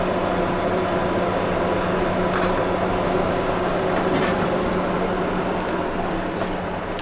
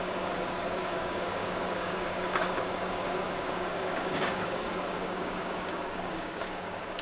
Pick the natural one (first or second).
first